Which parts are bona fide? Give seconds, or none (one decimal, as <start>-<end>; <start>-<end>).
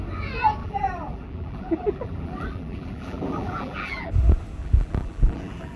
0.0-0.6; 4.1-4.6